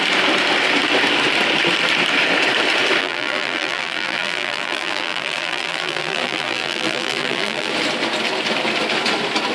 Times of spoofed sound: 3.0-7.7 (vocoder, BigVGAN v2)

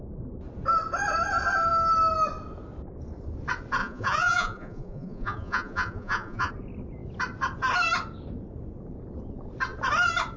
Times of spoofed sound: 3.8-6.5 (vocoder, Vocos)